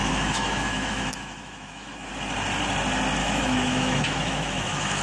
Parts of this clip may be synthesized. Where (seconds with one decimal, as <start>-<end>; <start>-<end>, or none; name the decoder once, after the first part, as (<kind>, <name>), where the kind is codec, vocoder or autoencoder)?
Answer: 0.0-2.1 (autoencoder, DAC-VAE); 3.2-5.0